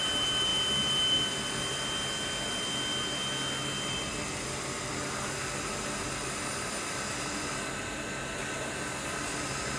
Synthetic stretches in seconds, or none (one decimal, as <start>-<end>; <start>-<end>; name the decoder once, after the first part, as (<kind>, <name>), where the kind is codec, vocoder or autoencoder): none